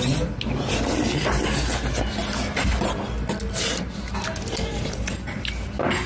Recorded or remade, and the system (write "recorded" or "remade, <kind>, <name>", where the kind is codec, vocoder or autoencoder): recorded